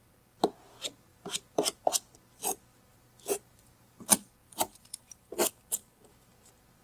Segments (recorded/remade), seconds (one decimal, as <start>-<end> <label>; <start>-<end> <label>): 0.0-1.1 recorded; 1.1-1.8 remade; 1.8-2.9 recorded; 2.9-4.0 remade; 4.0-4.4 recorded; 4.4-5.3 remade; 5.3-6.8 recorded